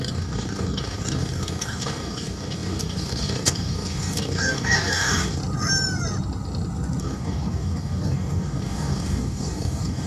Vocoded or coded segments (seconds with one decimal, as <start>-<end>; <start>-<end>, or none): 0.0-5.4; 7.0-10.1